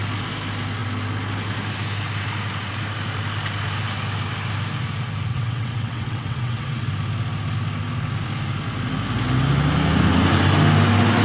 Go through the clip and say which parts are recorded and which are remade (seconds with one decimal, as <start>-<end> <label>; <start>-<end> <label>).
0.0-5.3 recorded; 5.3-6.9 remade; 6.9-11.2 recorded